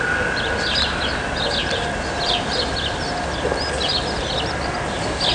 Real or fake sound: real